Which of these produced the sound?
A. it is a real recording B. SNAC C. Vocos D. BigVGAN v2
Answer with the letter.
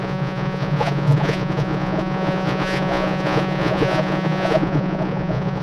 C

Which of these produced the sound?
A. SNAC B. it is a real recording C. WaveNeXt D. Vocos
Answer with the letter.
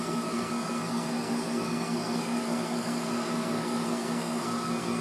A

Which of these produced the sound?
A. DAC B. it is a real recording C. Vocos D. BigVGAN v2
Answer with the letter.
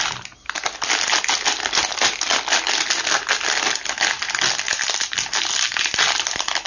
B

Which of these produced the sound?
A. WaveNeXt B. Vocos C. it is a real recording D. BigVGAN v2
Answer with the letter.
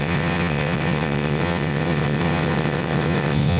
A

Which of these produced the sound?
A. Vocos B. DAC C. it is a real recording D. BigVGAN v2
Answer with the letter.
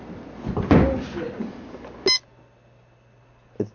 C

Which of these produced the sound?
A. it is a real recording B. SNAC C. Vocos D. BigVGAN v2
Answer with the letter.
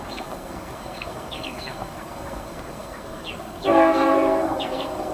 B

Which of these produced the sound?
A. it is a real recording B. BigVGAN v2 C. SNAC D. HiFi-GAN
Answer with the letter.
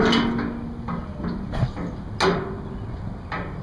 A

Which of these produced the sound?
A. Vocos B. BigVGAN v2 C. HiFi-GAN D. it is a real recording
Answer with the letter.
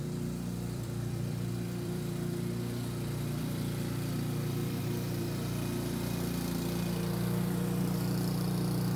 B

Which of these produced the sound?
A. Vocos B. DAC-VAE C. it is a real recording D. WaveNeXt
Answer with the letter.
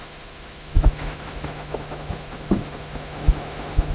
B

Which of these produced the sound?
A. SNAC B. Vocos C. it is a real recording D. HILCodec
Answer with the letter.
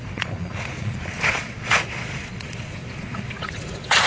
B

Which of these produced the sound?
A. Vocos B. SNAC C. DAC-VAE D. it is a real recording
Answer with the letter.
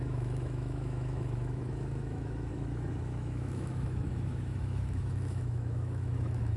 C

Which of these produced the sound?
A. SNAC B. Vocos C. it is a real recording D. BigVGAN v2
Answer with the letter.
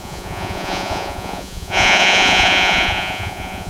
B